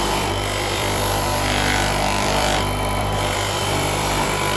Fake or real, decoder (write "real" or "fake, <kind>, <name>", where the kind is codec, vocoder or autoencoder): fake, vocoder, BigVGAN v2